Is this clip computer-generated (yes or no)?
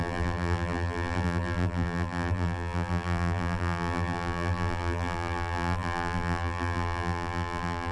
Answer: yes